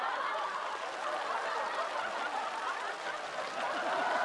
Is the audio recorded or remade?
recorded